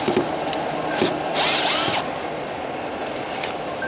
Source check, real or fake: fake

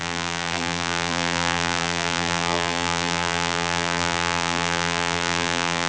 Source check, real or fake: fake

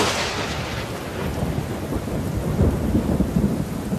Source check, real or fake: real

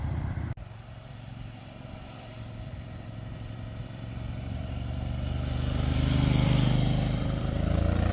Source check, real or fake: fake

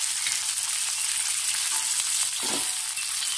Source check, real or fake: real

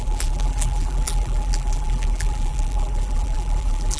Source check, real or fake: fake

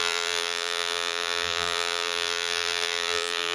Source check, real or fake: fake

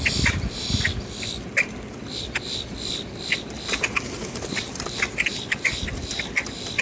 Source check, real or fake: fake